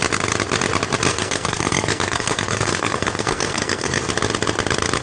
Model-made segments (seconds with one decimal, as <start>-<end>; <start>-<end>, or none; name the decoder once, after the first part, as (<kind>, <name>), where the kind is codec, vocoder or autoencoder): 1.1-4.1 (codec, SNAC)